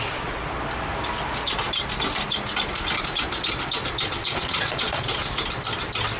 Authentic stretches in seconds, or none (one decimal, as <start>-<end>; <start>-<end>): 0.4-4.1; 5.2-6.2